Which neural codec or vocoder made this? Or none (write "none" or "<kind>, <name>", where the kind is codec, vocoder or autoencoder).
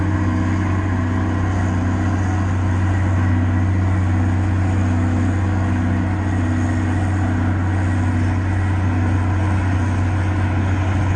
none